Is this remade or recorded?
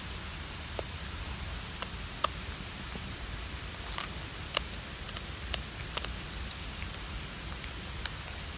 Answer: recorded